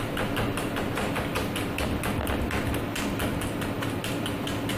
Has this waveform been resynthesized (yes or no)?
no